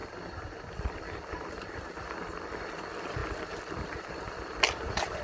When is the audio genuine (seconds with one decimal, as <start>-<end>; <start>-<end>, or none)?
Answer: 0.0-1.1